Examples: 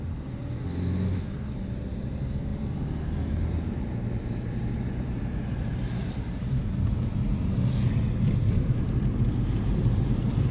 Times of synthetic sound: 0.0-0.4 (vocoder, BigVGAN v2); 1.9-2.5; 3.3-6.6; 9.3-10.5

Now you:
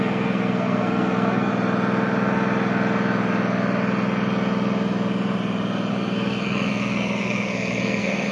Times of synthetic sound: 0.0-1.5 (codec, SNAC); 5.9-8.3

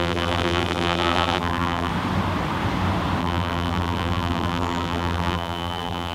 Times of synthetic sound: 0.0-1.9 (vocoder, BigVGAN v2); 3.2-6.1

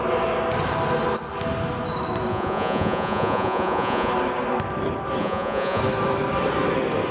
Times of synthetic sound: 2.3-4.1 (vocoder, Vocos); 5.2-5.8

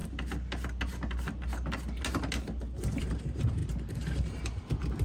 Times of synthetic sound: 3.0-5.0 (vocoder, BigVGAN v2)

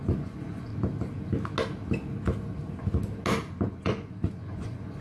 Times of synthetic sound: 0.0-0.7 (vocoder, Vocos); 3.7-5.0

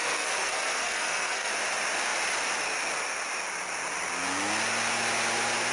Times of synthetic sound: 0.0-1.5 (codec, SNAC)